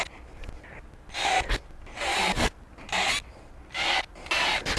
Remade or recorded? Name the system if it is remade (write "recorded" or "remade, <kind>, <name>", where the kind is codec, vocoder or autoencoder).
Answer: recorded